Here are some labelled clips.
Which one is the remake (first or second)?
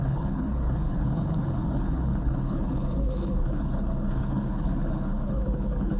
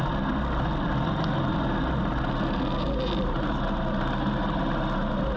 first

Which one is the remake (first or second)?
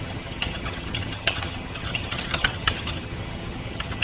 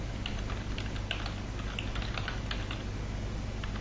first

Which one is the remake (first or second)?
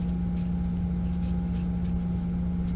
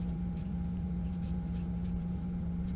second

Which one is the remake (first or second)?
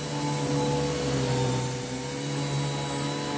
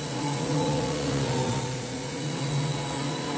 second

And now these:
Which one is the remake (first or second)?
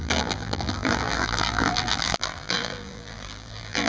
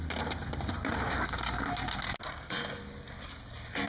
first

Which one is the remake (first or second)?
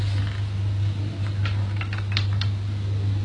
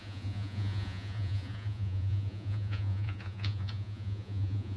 second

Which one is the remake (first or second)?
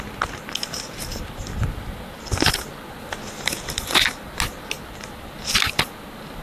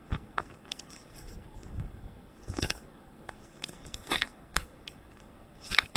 second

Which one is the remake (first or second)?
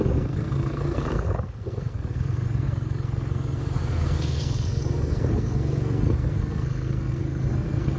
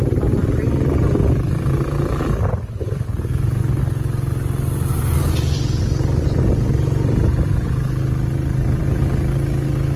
first